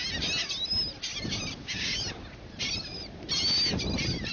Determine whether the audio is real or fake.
real